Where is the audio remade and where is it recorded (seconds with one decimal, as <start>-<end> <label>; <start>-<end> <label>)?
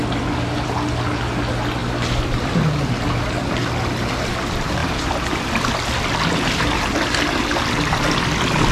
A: 0.0-1.8 recorded; 1.8-3.6 remade; 3.6-4.8 recorded; 4.8-5.6 remade; 5.6-8.7 recorded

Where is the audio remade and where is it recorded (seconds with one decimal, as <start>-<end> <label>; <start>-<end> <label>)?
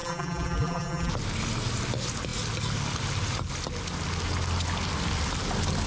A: 0.0-1.1 remade; 1.1-5.9 recorded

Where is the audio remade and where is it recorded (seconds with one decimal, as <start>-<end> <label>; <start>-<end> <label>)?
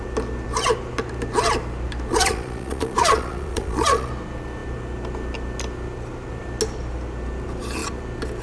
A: 0.0-2.1 recorded; 2.1-4.1 remade; 4.1-8.4 recorded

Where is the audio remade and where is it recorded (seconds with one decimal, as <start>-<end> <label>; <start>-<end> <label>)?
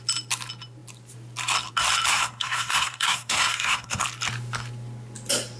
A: 0.0-2.1 recorded; 2.1-4.0 remade; 4.0-5.6 recorded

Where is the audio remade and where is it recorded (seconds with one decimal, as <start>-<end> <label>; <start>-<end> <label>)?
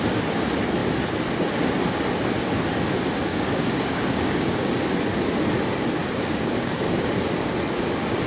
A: 0.0-3.3 recorded; 3.3-4.7 remade; 4.7-6.0 recorded; 6.0-7.1 remade; 7.1-8.3 recorded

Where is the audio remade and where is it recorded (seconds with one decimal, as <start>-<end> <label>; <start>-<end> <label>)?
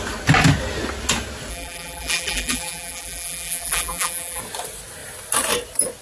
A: 0.0-1.5 recorded; 1.5-4.4 remade; 4.4-6.0 recorded